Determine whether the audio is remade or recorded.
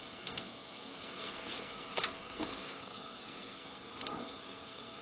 remade